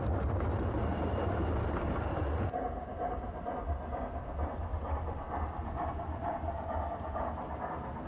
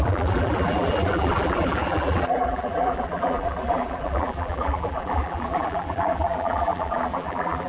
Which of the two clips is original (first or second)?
first